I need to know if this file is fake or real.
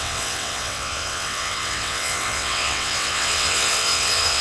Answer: fake